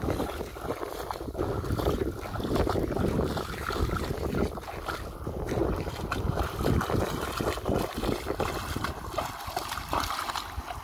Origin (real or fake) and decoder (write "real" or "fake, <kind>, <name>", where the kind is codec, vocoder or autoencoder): real